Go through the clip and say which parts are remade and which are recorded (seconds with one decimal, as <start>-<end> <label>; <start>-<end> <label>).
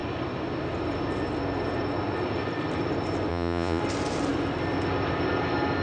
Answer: 0.0-3.3 recorded; 3.3-3.8 remade; 3.8-5.8 recorded